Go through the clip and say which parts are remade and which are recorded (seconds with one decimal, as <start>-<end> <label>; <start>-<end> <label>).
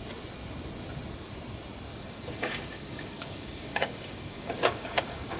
0.0-1.9 recorded; 1.9-5.4 remade